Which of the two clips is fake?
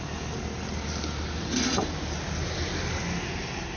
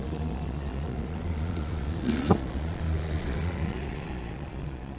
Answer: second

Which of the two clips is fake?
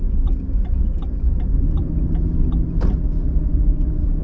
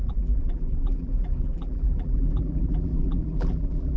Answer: second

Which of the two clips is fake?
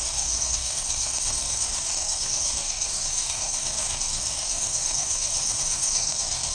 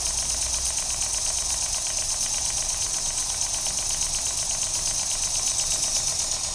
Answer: first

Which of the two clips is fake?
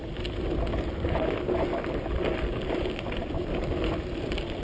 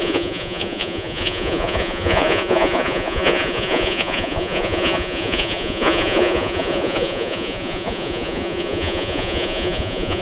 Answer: second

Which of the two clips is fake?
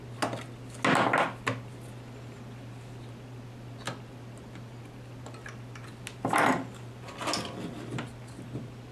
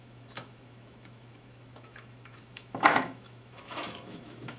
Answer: second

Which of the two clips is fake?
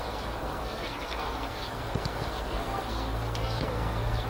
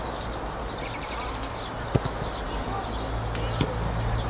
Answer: first